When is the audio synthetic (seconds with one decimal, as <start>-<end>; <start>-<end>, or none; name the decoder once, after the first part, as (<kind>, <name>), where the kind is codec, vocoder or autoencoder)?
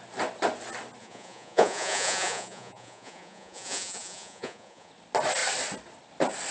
1.0-4.9 (vocoder, Vocos)